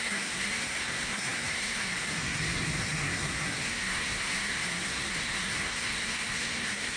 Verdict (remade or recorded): remade